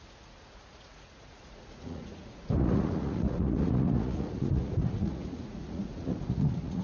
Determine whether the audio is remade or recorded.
remade